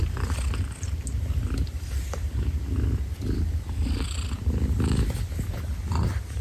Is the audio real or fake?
real